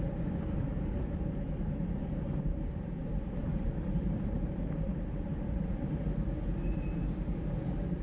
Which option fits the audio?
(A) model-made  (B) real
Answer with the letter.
A